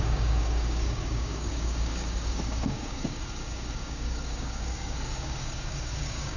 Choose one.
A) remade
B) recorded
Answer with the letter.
A